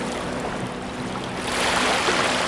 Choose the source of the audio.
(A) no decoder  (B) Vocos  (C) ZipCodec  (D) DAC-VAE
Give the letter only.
A